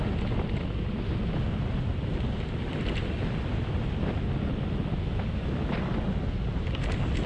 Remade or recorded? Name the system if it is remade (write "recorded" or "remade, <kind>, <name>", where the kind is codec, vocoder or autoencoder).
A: recorded